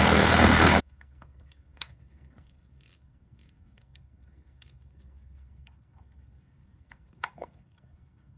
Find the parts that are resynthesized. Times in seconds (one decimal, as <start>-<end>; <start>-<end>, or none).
0.0-8.4

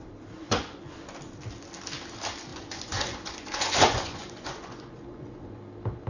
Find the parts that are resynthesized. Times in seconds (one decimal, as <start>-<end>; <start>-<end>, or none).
0.4-0.9; 2.5-5.6

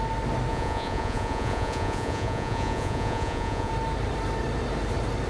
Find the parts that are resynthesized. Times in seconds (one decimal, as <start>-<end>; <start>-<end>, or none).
0.5-3.7

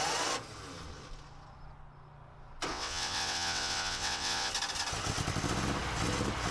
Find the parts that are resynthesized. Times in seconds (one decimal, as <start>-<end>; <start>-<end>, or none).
2.7-4.5

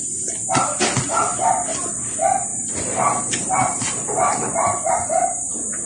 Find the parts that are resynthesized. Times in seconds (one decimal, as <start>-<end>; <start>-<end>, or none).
none